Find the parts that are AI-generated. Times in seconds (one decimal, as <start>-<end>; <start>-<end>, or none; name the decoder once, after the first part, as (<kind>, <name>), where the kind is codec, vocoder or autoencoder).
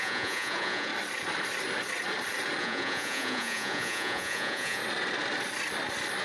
0.0-0.9 (vocoder, Vocos); 2.6-4.8